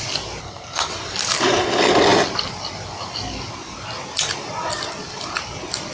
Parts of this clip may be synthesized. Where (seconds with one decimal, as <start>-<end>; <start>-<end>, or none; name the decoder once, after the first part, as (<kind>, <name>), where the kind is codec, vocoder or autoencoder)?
0.4-0.9 (codec, SNAC)